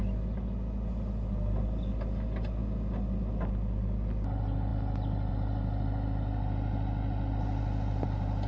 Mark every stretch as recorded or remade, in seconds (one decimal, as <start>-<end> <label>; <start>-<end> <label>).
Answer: 0.0-8.5 recorded